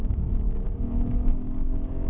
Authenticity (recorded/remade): remade